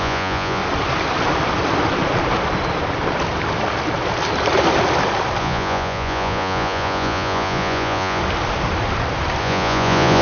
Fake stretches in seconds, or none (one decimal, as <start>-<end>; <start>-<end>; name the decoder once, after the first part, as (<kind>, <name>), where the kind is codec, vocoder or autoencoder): 0.0-0.6 (vocoder, Vocos); 5.4-8.2; 9.4-10.2